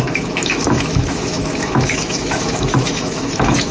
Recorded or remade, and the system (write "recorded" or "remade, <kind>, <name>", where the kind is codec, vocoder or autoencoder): remade, autoencoder, DAC-VAE